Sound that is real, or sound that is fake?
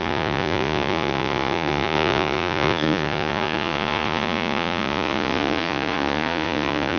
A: fake